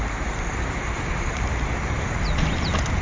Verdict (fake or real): fake